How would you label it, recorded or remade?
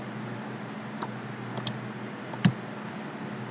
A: recorded